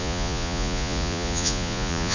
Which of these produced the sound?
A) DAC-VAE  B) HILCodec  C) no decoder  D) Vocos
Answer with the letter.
D